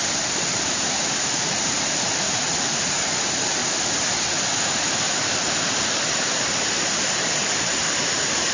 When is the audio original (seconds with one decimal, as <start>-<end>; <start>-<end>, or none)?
none